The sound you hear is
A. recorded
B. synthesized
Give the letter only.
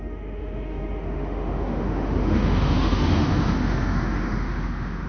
B